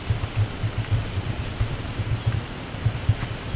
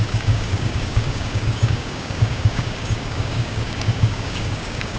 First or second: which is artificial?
second